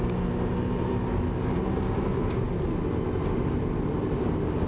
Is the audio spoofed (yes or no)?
no